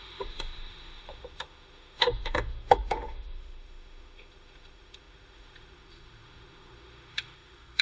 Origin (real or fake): fake